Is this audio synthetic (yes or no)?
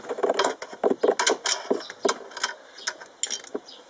no